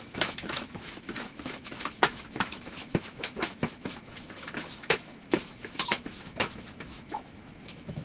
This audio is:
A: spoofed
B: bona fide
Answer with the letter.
A